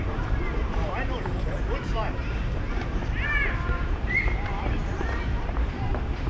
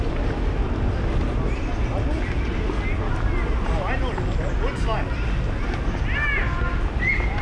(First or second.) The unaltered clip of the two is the second